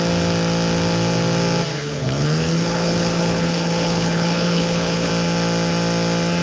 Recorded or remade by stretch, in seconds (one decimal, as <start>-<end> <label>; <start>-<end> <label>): 0.0-1.7 recorded; 1.7-5.1 remade; 5.1-6.4 recorded